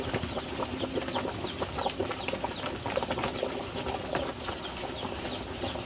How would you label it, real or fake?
real